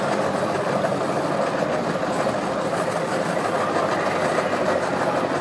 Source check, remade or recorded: recorded